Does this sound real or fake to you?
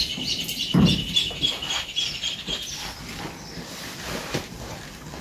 real